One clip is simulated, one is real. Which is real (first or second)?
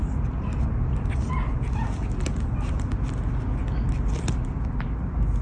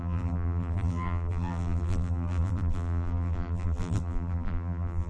first